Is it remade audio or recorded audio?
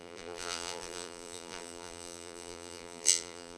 remade